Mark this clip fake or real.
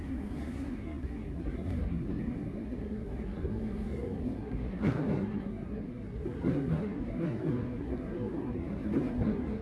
fake